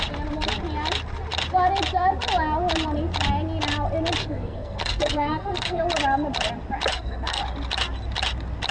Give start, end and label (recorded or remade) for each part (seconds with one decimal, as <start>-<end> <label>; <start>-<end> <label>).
0.0-4.2 recorded; 4.2-5.8 remade; 5.8-6.9 recorded; 6.9-7.4 remade; 7.4-8.7 recorded